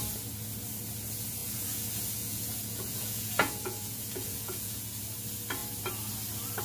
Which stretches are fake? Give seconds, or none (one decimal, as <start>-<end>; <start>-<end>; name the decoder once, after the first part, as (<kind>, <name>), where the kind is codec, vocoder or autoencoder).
1.4-4.9 (vocoder, Vocos)